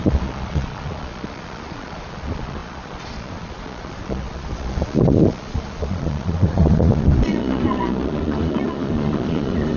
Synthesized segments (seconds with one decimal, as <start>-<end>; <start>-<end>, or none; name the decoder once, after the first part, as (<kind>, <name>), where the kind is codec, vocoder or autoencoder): 0.0-9.8 (vocoder, Vocos)